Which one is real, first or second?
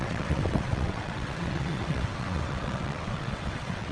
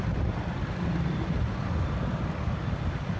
second